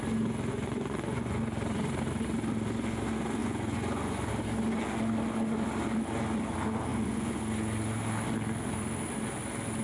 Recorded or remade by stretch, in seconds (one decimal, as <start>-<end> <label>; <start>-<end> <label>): 0.0-0.5 recorded; 0.5-1.4 remade; 1.4-3.4 recorded; 3.4-4.3 remade; 4.3-6.9 recorded; 6.9-7.4 remade; 7.4-9.8 recorded